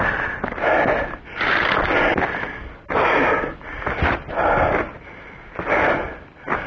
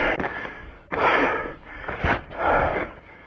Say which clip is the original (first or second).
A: first